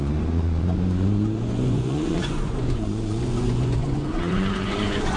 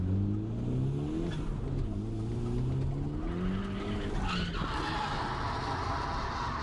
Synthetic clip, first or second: first